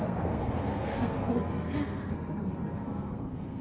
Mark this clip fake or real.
fake